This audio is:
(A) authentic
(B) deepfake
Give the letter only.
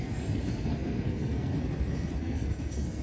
B